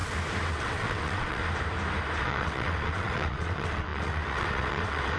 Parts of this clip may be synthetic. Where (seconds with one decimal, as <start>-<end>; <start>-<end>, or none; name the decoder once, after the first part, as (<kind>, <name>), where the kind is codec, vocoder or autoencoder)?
0.5-1.4 (vocoder, WaveNeXt); 2.2-5.2